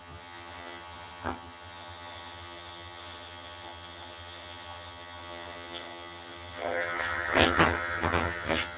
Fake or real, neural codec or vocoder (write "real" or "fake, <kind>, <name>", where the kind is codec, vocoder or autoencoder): fake, vocoder, HiFi-GAN